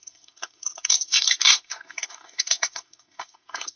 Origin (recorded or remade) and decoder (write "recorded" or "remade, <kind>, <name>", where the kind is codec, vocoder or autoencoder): remade, codec, SNAC